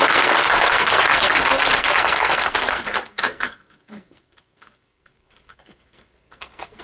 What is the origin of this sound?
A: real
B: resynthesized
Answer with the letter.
B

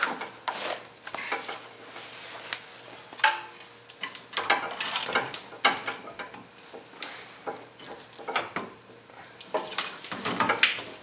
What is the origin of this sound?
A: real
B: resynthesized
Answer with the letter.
A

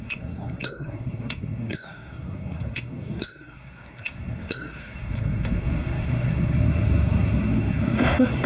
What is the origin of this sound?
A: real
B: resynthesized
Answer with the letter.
B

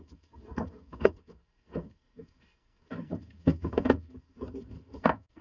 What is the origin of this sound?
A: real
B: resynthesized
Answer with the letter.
B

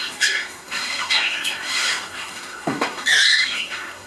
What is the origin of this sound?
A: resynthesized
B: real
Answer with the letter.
A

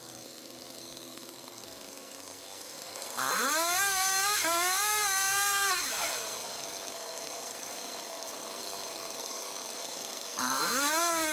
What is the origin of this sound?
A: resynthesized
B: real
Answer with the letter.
A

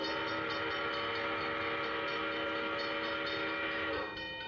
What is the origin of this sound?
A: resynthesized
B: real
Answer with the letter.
B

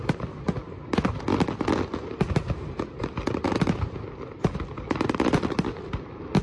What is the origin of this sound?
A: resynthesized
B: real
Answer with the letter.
B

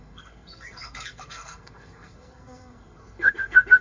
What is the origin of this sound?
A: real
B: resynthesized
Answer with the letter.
B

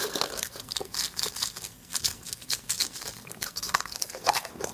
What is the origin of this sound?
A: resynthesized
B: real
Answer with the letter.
A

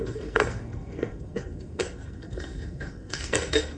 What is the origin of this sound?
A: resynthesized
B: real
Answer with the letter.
A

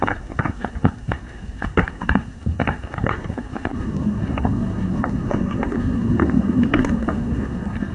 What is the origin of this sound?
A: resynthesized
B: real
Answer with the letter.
A